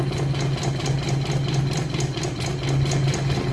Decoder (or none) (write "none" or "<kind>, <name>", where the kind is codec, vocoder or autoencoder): none